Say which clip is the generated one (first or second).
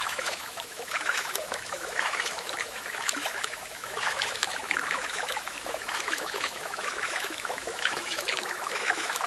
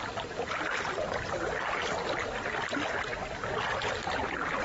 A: first